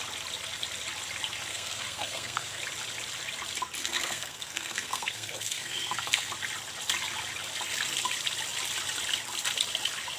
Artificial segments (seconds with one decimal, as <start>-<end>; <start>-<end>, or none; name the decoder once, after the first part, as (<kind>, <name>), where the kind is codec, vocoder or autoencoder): 1.5-2.6 (codec, SNAC); 3.8-6.3